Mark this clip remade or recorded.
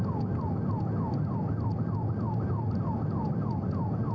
recorded